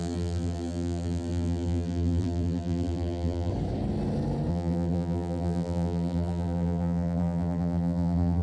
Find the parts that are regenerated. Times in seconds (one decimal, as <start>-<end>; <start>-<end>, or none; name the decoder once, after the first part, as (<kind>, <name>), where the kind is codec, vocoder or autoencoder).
0.0-3.5 (vocoder, BigVGAN v2); 4.5-8.4